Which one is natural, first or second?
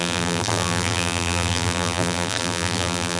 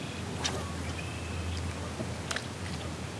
second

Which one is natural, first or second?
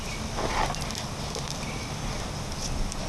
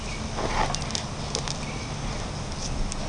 second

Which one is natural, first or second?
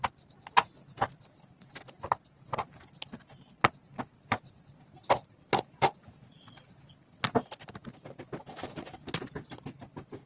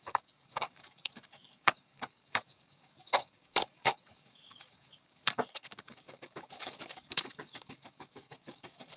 first